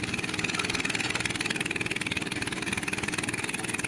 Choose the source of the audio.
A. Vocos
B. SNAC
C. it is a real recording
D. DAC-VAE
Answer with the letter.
C